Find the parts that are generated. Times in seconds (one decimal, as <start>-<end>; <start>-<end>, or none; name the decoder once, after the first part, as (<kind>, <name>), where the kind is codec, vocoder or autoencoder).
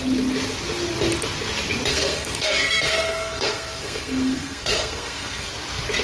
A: 1.9-5.5 (codec, SNAC)